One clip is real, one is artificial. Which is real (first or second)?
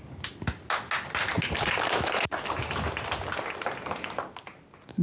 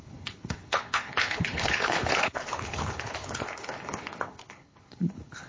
first